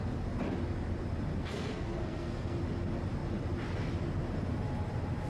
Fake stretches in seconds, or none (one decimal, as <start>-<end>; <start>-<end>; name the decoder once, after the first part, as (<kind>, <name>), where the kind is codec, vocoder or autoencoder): 1.3-2.6 (codec, SNAC)